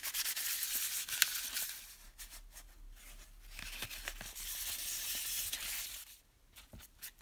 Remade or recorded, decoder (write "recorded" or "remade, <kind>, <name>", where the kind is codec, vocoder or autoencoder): recorded